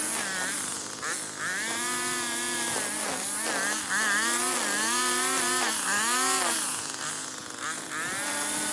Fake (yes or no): no